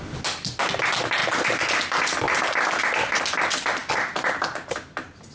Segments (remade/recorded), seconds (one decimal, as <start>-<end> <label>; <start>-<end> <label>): 0.0-5.3 recorded

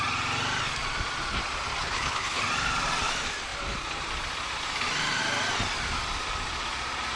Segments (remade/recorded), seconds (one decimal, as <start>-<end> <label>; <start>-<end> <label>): 0.0-1.8 recorded; 1.8-2.4 remade; 2.4-7.2 recorded

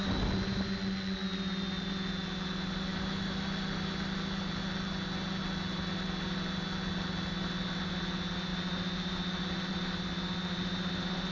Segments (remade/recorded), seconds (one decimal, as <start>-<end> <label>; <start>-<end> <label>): 0.0-11.3 recorded

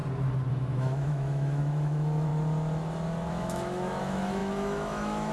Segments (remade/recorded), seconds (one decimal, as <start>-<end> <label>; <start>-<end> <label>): 0.0-0.5 recorded; 0.5-2.3 remade; 2.3-3.3 recorded; 3.3-5.3 remade